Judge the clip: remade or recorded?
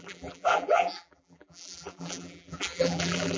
remade